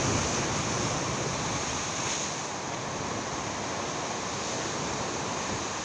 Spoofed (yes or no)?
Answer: no